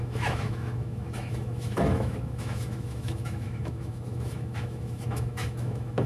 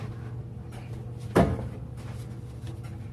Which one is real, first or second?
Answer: second